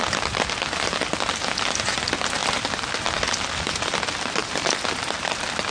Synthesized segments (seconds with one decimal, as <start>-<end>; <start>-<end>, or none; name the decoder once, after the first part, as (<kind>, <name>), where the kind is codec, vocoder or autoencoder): none